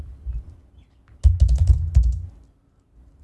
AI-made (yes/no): no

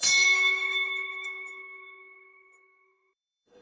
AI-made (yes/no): yes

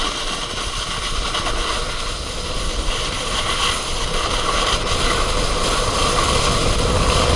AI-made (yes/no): no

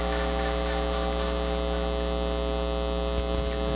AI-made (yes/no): no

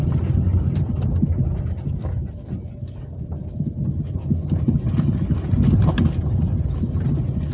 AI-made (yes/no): no